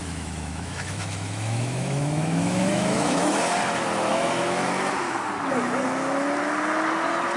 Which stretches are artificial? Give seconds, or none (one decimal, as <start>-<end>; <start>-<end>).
0.0-3.4; 4.1-4.7